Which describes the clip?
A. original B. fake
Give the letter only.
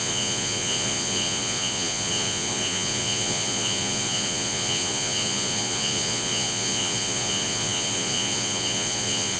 B